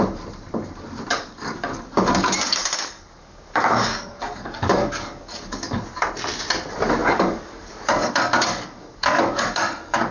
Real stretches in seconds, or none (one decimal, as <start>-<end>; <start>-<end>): 0.0-1.1; 5.8-7.0